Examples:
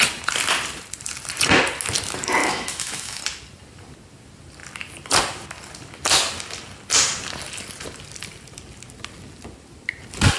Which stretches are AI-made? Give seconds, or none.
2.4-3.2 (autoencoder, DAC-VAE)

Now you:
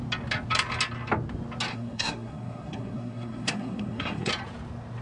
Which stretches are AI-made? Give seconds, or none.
1.7-4.3 (codec, SNAC)

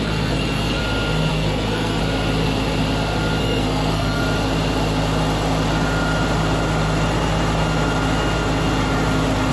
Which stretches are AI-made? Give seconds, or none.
0.0-0.8 (codec, SNAC); 1.3-2.0; 3.4-4.2

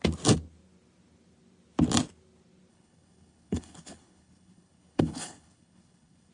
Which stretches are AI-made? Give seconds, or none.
2.7-6.3 (codec, HILCodec)

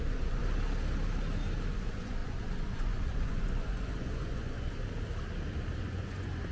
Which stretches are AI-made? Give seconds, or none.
0.0-0.4 (vocoder, Vocos); 1.7-4.8; 5.8-6.5

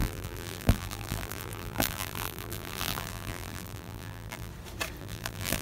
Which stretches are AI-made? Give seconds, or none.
0.0-4.5 (vocoder, BigVGAN v2); 5.0-5.6